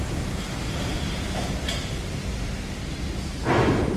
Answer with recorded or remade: recorded